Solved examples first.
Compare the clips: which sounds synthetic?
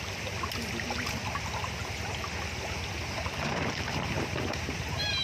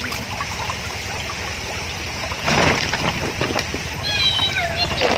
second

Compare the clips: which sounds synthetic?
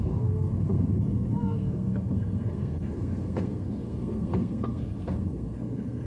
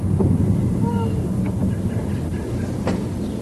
first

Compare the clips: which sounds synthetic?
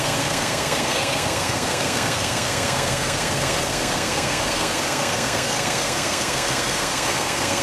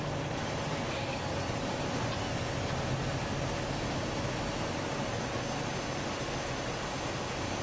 first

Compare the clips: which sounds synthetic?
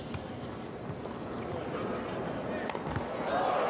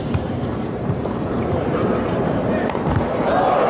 second